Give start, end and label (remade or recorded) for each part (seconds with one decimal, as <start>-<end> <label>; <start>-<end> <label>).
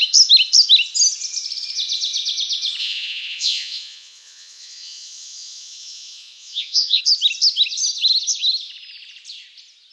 0.0-2.8 recorded; 2.8-7.0 remade; 7.0-9.9 recorded